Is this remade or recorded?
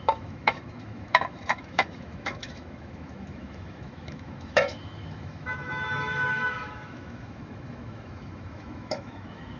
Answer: remade